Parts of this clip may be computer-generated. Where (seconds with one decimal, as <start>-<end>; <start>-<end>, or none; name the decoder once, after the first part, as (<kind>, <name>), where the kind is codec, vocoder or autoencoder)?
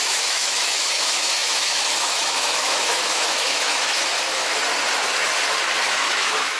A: 0.0-4.6 (autoencoder, DAC-VAE); 5.9-6.6